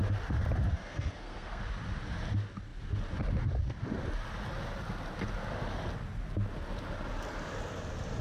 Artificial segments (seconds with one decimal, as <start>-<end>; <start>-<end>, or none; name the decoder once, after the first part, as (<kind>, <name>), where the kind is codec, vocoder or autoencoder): 0.7-1.6 (codec, SNAC)

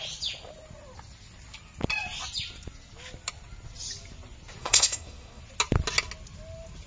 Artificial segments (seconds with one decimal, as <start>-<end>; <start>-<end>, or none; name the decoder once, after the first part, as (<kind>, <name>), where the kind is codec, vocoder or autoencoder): 4.6-5.4 (codec, SNAC)

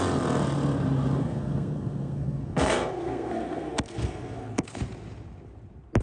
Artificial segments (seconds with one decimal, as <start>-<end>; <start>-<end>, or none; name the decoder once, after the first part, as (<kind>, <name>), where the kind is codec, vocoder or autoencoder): 1.2-4.8 (codec, SNAC)

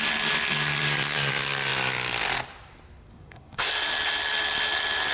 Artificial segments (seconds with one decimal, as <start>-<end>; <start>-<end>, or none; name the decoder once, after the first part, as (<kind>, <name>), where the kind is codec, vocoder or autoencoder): 3.1-3.7 (codec, SNAC)

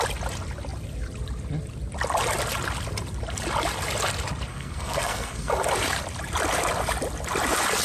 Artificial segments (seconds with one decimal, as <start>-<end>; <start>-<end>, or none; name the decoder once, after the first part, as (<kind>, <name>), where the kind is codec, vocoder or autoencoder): 4.5-5.5 (codec, SNAC)

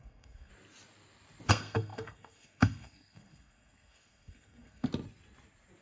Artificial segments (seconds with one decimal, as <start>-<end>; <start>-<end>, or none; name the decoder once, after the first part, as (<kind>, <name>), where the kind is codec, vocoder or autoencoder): 0.0-0.5 (codec, SNAC); 1.5-4.9

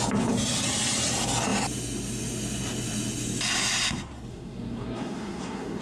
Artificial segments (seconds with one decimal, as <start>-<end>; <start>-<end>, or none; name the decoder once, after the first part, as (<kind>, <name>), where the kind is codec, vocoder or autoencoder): 4.3-5.8 (codec, SNAC)

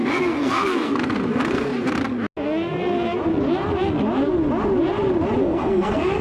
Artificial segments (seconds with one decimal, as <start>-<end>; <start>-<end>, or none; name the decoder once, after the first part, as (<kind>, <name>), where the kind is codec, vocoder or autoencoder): 0.0-1.7 (codec, SNAC); 5.4-6.2